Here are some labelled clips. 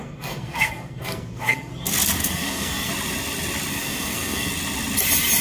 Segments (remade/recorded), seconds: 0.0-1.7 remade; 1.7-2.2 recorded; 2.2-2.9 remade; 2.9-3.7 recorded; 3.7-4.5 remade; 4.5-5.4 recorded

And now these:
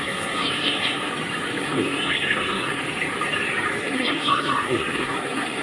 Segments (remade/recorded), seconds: 0.0-1.1 remade; 1.1-1.6 recorded; 1.6-2.8 remade; 2.8-3.8 recorded; 3.8-5.6 remade

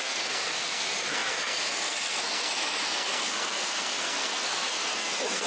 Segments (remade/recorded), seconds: 0.0-5.5 remade